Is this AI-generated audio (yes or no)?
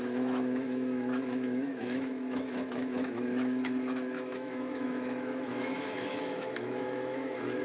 yes